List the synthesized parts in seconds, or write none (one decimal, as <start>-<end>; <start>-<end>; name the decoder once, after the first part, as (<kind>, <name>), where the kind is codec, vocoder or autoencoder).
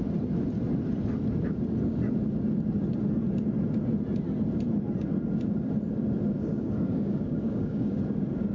6.4-8.0 (codec, DAC)